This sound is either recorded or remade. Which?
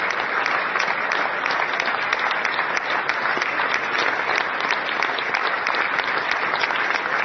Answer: recorded